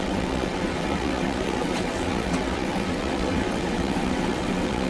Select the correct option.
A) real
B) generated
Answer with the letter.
B